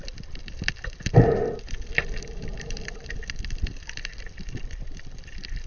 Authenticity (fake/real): fake